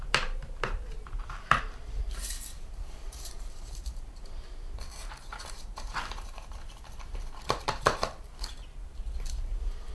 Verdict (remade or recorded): remade